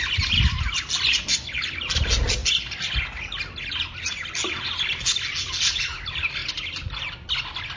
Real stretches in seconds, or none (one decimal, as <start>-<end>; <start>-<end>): 0.0-7.8